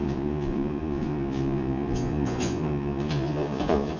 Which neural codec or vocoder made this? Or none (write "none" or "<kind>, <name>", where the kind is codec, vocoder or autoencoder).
vocoder, Vocos